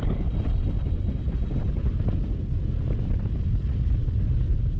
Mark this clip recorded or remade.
recorded